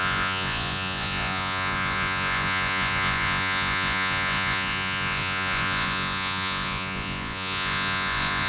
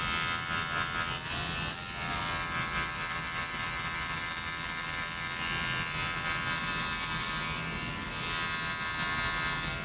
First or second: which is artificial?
first